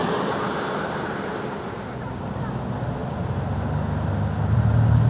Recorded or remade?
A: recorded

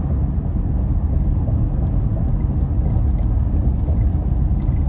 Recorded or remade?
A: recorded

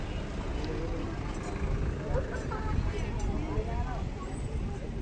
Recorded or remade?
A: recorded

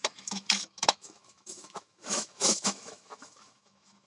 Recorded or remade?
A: remade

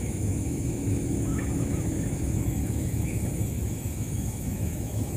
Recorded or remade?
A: remade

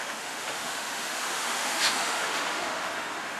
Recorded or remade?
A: remade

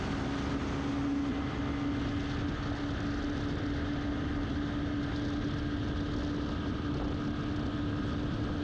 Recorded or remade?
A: recorded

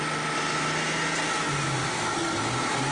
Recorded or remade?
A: recorded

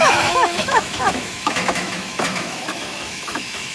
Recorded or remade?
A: remade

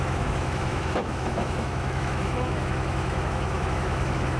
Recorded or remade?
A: remade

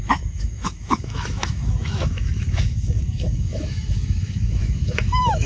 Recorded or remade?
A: remade